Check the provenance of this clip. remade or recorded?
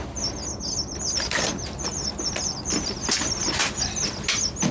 recorded